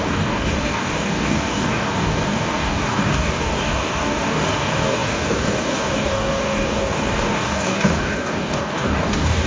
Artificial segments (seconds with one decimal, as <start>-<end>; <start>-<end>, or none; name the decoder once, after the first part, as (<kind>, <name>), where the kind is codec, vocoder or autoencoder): 0.0-9.5 (codec, DAC)